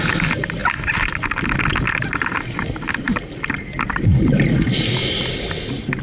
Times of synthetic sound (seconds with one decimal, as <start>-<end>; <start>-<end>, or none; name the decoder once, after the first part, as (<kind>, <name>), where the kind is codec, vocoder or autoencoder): 0.6-1.2 (vocoder, BigVGAN v2)